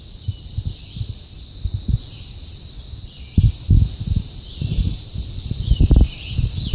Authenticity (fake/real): real